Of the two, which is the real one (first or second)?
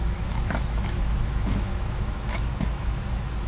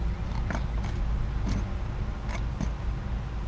second